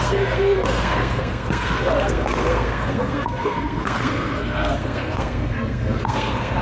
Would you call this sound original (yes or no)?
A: no